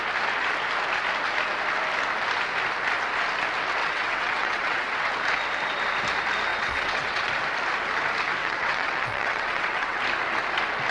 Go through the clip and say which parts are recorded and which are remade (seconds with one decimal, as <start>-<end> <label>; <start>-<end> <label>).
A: 0.0-3.8 recorded; 3.8-5.1 remade; 5.1-6.5 recorded; 6.5-7.3 remade; 7.3-8.4 recorded; 8.4-10.0 remade; 10.0-10.9 recorded

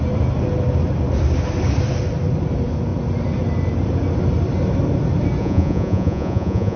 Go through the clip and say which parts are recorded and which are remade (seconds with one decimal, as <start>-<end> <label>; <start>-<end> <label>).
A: 0.0-5.4 recorded; 5.4-6.8 remade

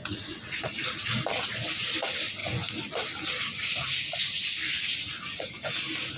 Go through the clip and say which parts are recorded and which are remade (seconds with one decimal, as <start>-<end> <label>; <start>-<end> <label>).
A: 0.0-0.6 remade; 0.6-6.2 recorded

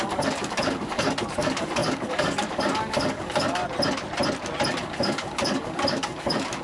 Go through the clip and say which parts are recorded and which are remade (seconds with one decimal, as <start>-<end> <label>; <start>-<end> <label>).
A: 0.0-3.6 remade; 3.6-4.7 recorded; 4.7-6.6 remade